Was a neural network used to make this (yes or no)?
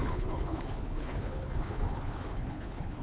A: yes